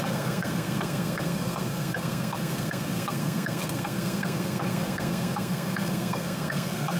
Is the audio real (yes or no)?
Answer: no